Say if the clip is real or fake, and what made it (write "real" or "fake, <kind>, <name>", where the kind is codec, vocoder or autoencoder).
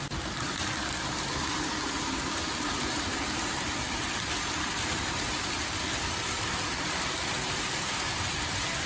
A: real